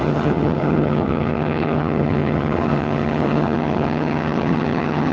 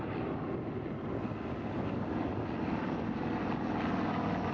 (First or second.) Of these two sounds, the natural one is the second